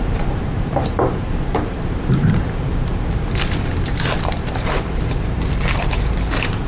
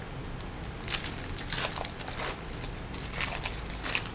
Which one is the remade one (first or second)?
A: first